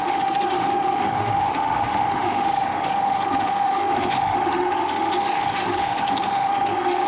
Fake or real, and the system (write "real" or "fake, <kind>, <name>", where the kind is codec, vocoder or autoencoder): fake, autoencoder, DAC-VAE